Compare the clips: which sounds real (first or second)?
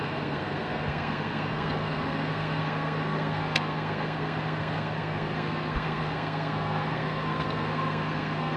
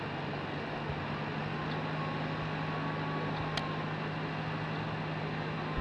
second